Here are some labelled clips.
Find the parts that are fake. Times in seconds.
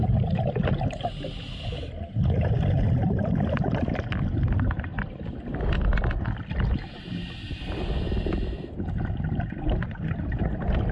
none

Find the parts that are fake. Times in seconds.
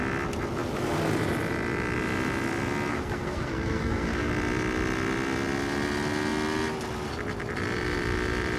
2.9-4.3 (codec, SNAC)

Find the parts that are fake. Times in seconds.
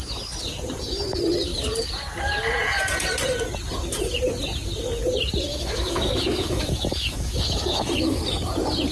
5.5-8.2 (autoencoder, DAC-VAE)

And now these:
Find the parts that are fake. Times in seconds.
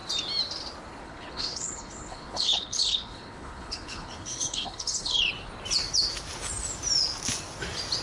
1.0-5.2 (codec, HILCodec)